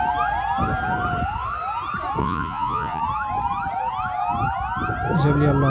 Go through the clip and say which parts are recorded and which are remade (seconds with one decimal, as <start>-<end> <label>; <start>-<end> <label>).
0.0-2.2 recorded; 2.2-3.0 remade; 3.0-5.7 recorded